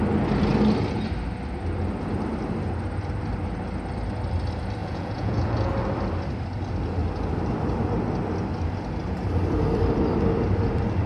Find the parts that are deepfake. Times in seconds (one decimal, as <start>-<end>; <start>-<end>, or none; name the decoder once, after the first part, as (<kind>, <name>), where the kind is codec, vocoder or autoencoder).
4.8-5.7 (vocoder, Vocos)